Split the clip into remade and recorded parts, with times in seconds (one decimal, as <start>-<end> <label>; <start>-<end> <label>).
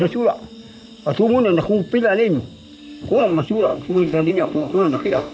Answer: 0.0-3.2 recorded; 3.2-5.3 remade